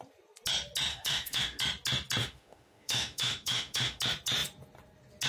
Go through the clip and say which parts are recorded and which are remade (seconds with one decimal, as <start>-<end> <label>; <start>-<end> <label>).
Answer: 0.0-0.9 recorded; 0.9-1.6 remade; 1.6-2.2 recorded; 2.2-4.0 remade; 4.0-5.3 recorded